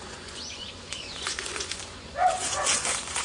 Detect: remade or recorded remade